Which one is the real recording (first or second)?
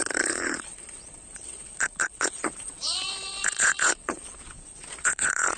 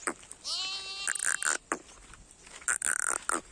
second